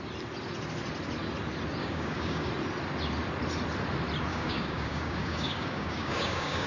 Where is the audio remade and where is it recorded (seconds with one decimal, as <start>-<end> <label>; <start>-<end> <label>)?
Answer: 0.0-1.8 recorded; 1.8-2.5 remade; 2.5-4.3 recorded; 4.3-6.7 remade